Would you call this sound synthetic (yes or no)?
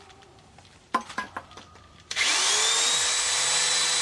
yes